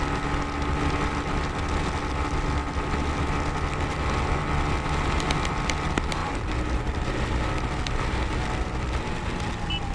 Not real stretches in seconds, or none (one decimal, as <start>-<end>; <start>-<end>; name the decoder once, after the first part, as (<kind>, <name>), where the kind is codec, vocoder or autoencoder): none